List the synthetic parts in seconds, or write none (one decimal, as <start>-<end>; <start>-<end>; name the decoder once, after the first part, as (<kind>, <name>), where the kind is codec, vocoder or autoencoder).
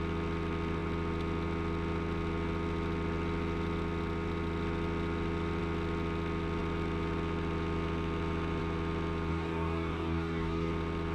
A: 9.3-10.7 (codec, DAC)